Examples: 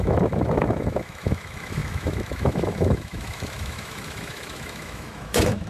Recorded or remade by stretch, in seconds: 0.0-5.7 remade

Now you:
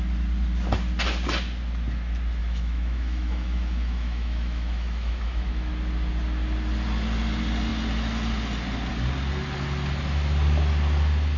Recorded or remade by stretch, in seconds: 0.0-2.4 recorded; 2.4-5.7 remade; 5.7-11.4 recorded

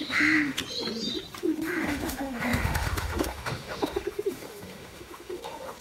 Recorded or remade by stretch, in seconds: 0.0-0.6 remade; 0.6-1.4 recorded; 1.4-5.8 remade

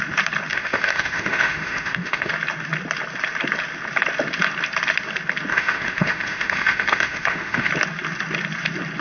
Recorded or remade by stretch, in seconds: 0.0-0.5 recorded; 0.5-2.3 remade; 2.3-5.5 recorded; 5.5-7.7 remade; 7.7-9.0 recorded

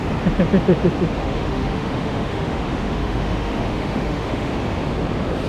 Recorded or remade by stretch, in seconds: 0.0-1.2 recorded; 1.2-4.5 remade; 4.5-5.5 recorded

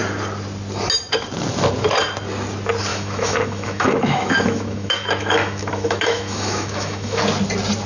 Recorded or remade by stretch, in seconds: 0.0-2.9 recorded; 2.9-7.2 remade; 7.2-7.9 recorded

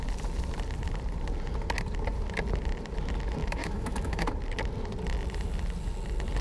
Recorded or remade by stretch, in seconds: 0.0-3.4 recorded; 3.4-4.3 remade; 4.3-6.4 recorded

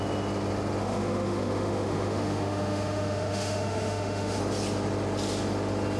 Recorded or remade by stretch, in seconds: 0.0-0.8 recorded; 0.8-4.4 remade; 4.4-6.0 recorded